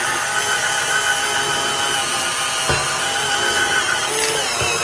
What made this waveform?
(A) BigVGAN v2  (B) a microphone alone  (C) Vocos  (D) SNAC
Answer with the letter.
B